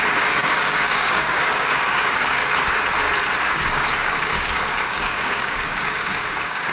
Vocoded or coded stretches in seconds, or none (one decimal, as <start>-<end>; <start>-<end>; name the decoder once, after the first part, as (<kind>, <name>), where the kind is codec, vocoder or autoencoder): 0.0-2.4 (codec, DAC); 3.4-6.7